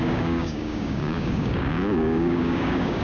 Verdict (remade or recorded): remade